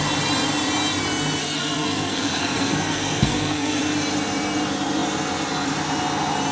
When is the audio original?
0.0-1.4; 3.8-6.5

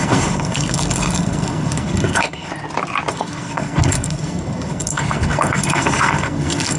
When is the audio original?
2.5-3.1

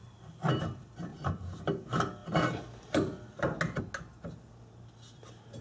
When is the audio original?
0.6-1.1; 1.6-5.6

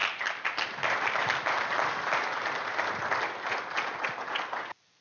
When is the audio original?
0.0-5.0

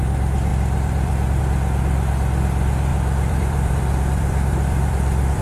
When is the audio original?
0.0-0.5; 1.4-2.9

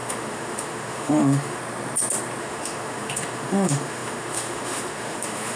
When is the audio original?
1.6-2.4

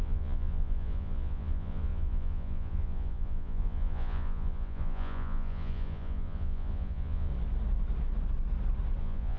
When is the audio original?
7.3-9.0

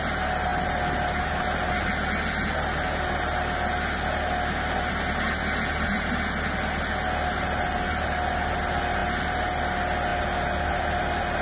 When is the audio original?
0.0-11.4